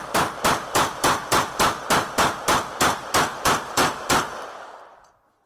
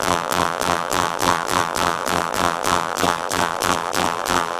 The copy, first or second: second